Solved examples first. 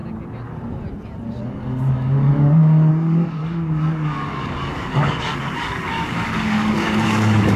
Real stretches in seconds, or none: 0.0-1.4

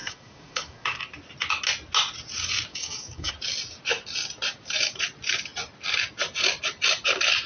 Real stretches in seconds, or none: 1.0-2.7; 3.3-7.5